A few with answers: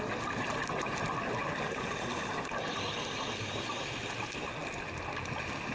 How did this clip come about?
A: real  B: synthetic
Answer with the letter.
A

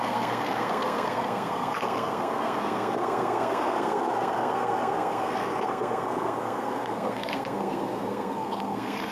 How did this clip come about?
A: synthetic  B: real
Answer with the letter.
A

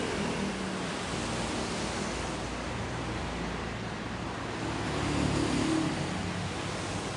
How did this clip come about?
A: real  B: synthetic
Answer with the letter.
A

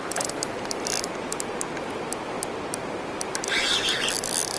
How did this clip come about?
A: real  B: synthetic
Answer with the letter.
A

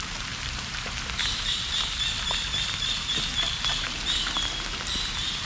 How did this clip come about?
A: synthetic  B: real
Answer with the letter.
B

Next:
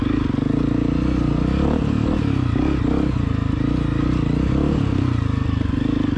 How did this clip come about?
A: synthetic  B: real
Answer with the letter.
B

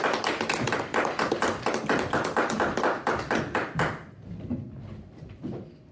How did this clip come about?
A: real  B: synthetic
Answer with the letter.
A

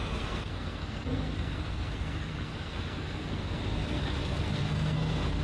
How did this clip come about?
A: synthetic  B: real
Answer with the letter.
A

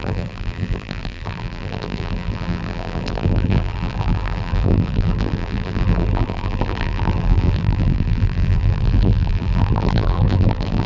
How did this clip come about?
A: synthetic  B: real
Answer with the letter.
A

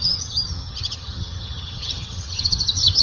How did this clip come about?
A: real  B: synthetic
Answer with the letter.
B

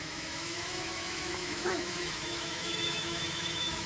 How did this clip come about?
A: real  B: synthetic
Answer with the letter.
B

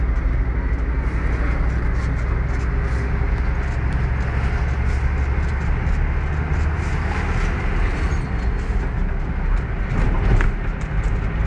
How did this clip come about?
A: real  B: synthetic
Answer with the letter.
A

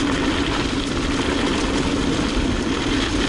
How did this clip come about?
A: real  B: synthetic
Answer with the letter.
A